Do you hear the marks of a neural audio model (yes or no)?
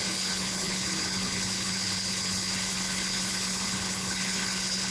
yes